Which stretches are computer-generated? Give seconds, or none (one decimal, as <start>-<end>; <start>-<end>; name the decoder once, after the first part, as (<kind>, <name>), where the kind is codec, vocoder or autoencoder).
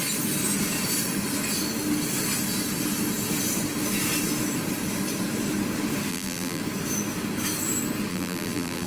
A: 6.1-6.6 (vocoder, BigVGAN v2); 8.1-8.9